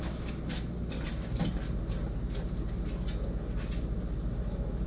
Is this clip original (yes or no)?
yes